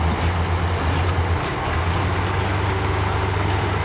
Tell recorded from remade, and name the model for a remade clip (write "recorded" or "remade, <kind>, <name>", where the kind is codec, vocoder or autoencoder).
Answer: recorded